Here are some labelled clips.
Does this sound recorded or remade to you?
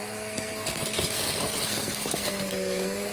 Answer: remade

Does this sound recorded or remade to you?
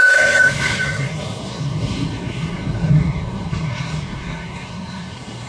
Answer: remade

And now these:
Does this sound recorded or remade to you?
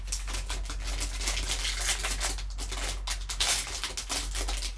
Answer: recorded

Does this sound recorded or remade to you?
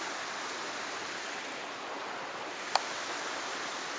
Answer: recorded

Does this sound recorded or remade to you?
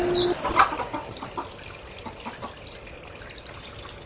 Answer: recorded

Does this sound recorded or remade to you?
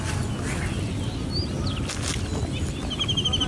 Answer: recorded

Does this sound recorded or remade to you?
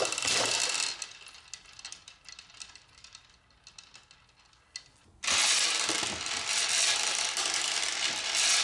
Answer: recorded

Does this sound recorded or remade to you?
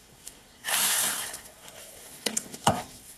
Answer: remade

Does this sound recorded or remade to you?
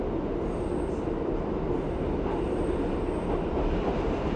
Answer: recorded